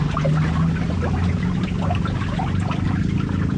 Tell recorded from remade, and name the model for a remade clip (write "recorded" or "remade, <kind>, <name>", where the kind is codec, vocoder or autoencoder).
recorded